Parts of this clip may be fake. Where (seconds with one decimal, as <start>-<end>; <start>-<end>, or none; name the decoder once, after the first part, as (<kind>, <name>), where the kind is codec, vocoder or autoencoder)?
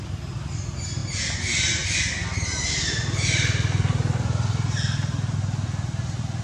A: none